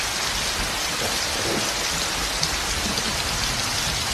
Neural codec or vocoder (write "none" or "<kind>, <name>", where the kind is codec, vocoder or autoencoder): none